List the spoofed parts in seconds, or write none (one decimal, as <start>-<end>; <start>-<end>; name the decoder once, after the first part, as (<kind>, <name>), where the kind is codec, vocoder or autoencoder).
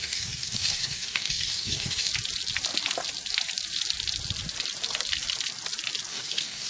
0.0-2.1 (codec, DAC); 6.1-6.7